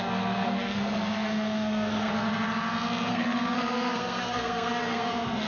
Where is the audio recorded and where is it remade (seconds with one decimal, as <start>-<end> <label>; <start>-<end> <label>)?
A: 0.0-2.1 remade; 2.1-3.1 recorded; 3.1-5.5 remade